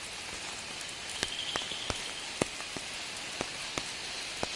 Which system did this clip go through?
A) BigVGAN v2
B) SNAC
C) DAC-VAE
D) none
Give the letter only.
D